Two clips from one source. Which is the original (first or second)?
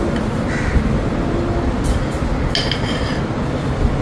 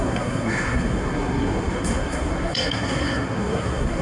first